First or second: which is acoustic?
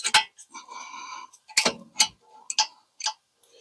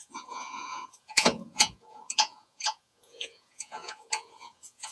first